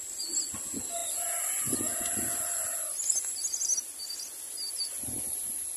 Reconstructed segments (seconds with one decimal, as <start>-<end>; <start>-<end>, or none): none